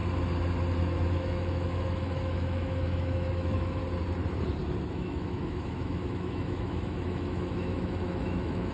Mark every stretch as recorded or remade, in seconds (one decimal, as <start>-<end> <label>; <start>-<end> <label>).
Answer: 0.0-0.8 recorded; 0.8-3.8 remade; 3.8-4.9 recorded; 4.9-8.7 remade